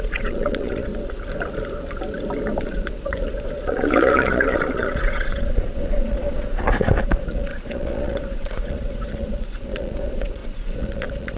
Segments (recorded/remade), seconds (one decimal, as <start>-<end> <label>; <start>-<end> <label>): 0.0-0.9 remade; 0.9-2.6 recorded; 2.6-11.4 remade